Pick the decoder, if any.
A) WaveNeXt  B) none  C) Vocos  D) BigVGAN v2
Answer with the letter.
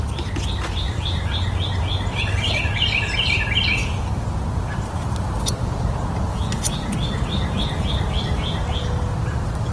B